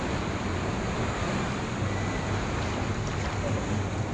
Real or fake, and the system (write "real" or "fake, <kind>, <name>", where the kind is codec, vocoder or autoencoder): real